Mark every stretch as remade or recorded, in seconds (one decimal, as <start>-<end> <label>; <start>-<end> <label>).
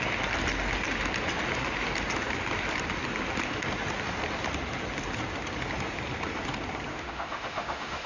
0.0-6.9 recorded; 6.9-8.1 remade